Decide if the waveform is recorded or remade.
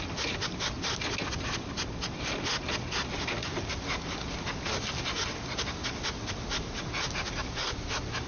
recorded